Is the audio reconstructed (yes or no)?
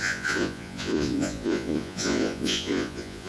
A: yes